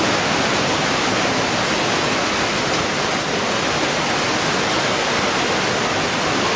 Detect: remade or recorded recorded